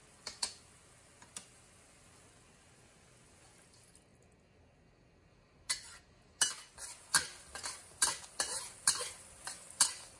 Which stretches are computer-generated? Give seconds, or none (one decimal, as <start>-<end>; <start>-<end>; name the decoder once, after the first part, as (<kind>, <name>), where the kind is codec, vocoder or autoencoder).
none